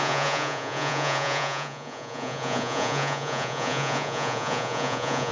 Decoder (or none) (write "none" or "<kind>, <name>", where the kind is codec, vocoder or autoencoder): vocoder, Vocos